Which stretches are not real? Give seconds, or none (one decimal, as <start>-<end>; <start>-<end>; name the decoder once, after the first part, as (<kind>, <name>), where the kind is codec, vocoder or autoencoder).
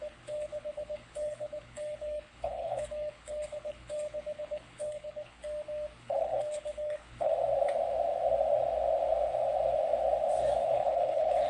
0.0-5.4 (codec, HILCodec); 6.0-7.3; 10.7-11.5